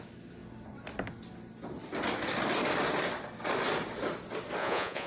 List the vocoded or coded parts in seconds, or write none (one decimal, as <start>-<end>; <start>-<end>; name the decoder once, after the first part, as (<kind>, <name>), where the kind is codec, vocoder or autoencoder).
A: 4.6-5.1 (vocoder, Vocos)

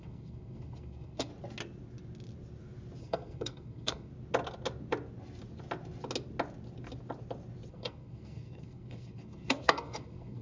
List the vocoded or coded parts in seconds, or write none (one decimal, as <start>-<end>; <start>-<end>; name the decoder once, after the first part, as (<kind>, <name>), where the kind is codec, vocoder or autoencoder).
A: 0.0-1.3 (codec, SNAC); 3.0-4.1; 7.7-10.4